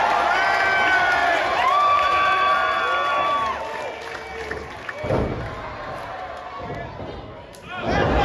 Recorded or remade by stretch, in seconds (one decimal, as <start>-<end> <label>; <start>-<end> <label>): 0.0-1.2 recorded; 1.2-2.8 remade; 2.8-8.2 recorded